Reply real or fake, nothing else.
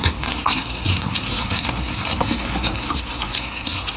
fake